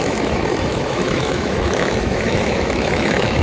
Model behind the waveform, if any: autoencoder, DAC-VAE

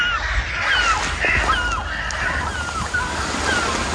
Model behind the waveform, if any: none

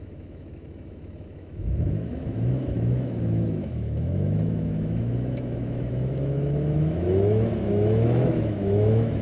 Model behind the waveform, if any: autoencoder, DAC-VAE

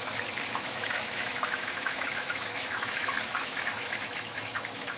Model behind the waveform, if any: autoencoder, DAC-VAE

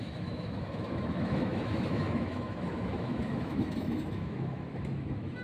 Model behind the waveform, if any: autoencoder, DAC-VAE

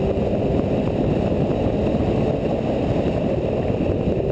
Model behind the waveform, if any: none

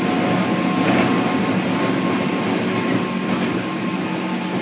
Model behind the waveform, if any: none